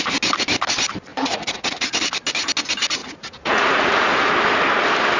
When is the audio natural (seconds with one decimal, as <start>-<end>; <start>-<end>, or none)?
0.0-1.1; 2.0-3.0; 4.3-5.2